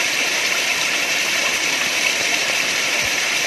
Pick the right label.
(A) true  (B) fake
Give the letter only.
B